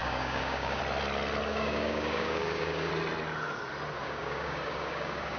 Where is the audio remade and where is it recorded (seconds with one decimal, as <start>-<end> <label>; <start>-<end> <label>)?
0.0-0.8 remade; 0.8-1.5 recorded; 1.5-2.9 remade; 2.9-4.0 recorded; 4.0-5.4 remade